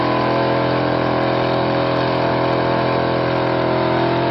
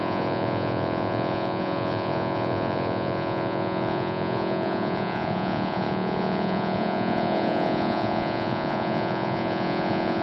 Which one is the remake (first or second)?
second